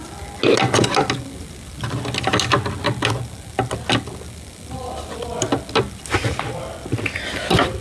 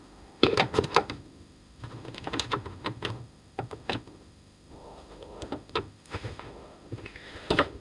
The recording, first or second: first